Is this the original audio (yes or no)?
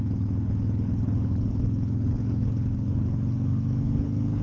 no